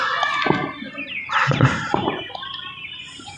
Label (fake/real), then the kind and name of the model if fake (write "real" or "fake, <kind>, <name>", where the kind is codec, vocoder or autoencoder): real